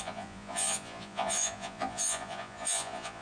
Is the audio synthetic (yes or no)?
yes